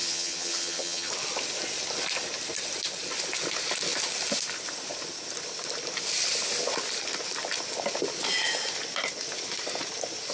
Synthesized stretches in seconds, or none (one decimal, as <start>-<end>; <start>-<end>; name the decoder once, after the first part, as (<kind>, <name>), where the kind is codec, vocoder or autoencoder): 0.0-1.1 (vocoder, HiFi-GAN)